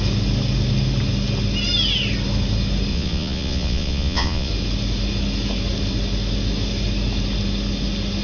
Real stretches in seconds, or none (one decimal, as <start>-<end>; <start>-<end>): 0.0-2.9; 4.5-8.2